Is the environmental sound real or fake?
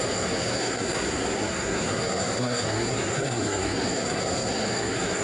fake